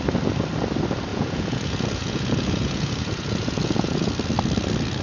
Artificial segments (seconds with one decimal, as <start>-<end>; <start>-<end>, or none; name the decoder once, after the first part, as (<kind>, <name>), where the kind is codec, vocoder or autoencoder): 1.1-4.1 (vocoder, Vocos)